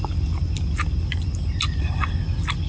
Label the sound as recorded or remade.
recorded